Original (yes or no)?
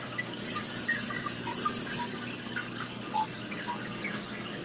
yes